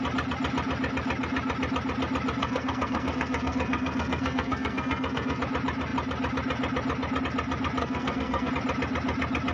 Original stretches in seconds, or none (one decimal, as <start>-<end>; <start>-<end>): 0.0-2.4; 5.4-7.8; 8.5-9.5

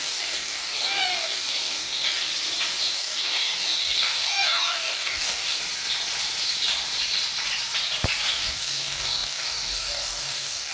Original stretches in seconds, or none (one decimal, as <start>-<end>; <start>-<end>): 2.3-2.8; 5.6-8.3

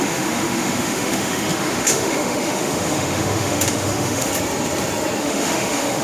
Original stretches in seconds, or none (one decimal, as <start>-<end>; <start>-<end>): 4.3-5.2

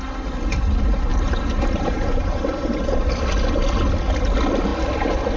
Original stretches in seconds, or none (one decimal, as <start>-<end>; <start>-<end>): 0.0-1.1; 3.1-5.4

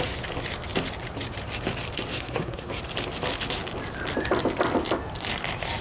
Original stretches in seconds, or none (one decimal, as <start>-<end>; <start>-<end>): 0.0-2.1; 2.8-5.8

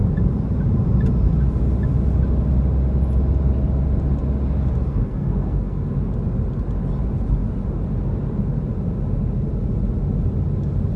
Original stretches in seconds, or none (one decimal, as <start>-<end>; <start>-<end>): 0.0-4.9; 5.9-11.0

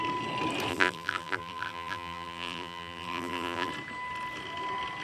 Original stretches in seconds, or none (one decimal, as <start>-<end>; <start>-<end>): 0.0-0.7; 3.7-5.0

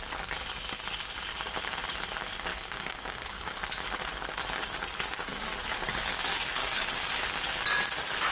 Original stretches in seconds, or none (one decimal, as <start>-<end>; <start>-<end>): 0.0-2.5; 3.6-6.6; 7.2-8.3